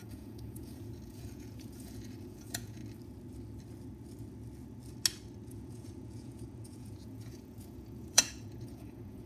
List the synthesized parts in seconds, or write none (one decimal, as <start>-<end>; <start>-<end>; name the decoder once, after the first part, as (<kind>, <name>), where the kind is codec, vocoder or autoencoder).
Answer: 0.0-2.8 (vocoder, Vocos); 5.5-9.3